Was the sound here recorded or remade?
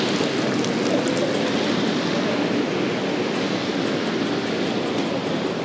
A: recorded